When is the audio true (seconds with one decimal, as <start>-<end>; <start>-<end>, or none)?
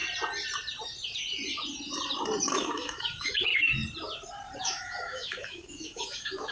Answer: 0.0-2.5; 3.5-4.6